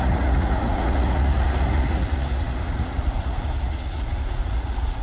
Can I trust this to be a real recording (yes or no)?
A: no